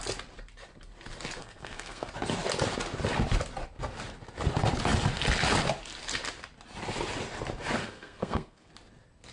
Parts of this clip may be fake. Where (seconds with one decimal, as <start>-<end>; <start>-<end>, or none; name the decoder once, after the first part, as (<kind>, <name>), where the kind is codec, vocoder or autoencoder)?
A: 1.4-2.1 (codec, SNAC); 7.8-8.7

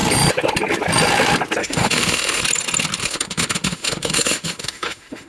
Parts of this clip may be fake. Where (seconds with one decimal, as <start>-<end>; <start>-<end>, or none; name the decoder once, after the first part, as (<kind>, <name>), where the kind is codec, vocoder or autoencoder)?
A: 1.6-2.4 (autoencoder, DAC-VAE); 3.0-5.3

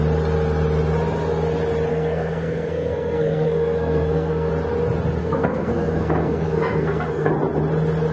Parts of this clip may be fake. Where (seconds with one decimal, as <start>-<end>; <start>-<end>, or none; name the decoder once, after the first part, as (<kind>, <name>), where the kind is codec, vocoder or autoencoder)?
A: 1.9-4.5 (codec, SNAC); 5.2-7.3

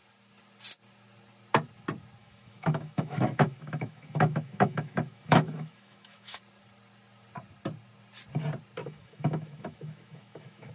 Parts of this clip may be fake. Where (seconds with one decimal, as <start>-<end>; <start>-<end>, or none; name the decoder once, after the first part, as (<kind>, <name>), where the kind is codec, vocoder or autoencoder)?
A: 2.2-6.4 (autoencoder, DAC-VAE); 8.8-10.7

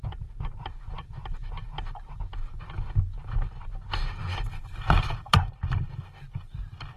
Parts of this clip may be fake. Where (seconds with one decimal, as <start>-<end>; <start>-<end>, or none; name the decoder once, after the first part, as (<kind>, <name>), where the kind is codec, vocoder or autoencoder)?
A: 4.3-5.5 (vocoder, BigVGAN v2)

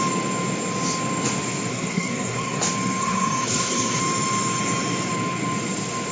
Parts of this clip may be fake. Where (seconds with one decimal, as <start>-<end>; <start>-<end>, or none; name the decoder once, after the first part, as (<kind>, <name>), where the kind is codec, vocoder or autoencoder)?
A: 1.7-2.6 (codec, SNAC); 3.0-4.0

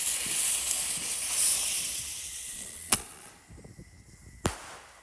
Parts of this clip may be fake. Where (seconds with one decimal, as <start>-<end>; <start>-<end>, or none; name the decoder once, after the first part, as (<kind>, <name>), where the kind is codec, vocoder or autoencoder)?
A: 2.3-3.3 (vocoder, Vocos)